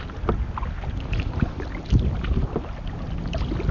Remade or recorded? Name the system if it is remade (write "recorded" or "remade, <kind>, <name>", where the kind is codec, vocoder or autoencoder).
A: recorded